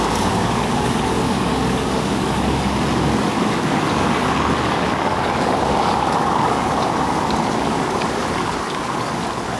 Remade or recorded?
remade